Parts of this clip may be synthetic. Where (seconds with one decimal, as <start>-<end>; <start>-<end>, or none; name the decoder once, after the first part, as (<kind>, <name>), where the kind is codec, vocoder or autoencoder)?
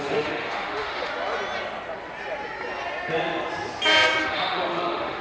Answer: 0.0-1.1 (autoencoder, DAC-VAE); 4.2-5.2